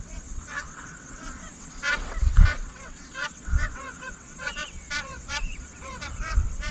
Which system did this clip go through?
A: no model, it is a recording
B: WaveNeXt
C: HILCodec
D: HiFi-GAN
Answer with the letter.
B